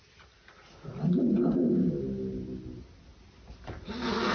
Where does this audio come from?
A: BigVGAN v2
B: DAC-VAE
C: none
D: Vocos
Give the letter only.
C